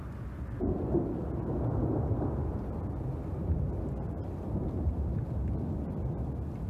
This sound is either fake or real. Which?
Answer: real